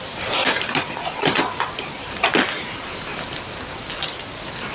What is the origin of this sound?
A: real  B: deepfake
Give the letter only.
A